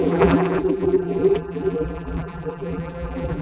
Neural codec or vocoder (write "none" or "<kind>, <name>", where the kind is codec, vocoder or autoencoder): vocoder, BigVGAN v2